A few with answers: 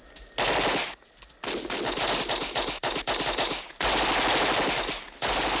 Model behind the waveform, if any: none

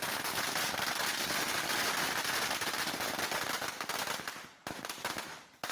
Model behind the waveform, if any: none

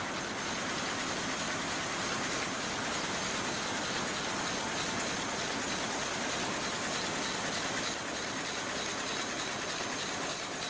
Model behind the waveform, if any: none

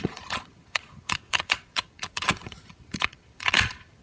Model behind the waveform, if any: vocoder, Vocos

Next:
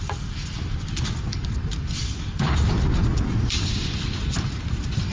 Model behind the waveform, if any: vocoder, BigVGAN v2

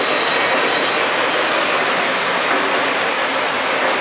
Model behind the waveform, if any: none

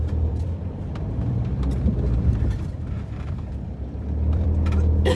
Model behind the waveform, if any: vocoder, BigVGAN v2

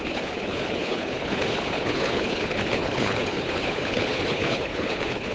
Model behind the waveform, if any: codec, HILCodec